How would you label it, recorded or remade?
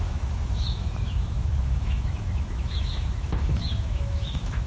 remade